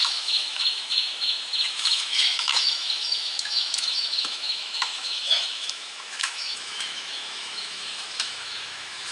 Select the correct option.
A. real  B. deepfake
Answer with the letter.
B